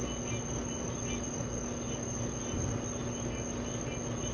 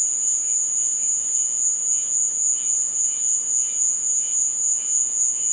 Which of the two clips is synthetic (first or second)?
second